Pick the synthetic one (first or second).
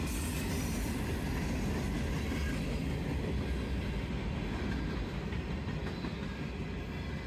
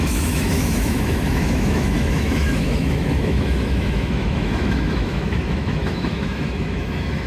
second